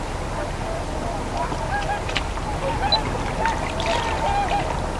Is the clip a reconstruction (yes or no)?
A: no